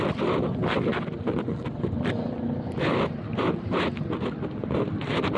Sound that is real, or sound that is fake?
fake